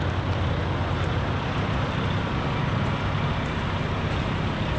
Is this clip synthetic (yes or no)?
no